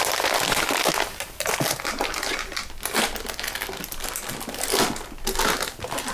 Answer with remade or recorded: recorded